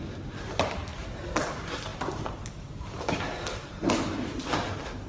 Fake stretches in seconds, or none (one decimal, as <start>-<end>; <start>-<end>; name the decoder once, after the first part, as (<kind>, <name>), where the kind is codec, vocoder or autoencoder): none